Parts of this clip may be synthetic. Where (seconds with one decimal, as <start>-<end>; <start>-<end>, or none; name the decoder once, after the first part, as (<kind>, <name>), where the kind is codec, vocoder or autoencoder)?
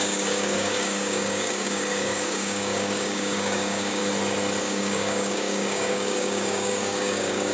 0.0-4.0 (codec, DAC); 4.6-7.5